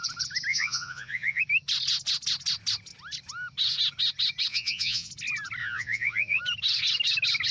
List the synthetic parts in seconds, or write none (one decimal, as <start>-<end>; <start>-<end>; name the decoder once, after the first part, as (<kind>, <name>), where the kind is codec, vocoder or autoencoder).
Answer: 0.5-1.4 (vocoder, Vocos); 4.5-5.1; 5.6-6.4